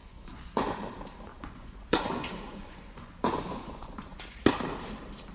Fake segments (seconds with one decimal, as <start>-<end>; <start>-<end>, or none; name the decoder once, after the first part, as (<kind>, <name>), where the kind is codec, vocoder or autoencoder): 0.0-0.8 (vocoder, Vocos); 1.3-4.2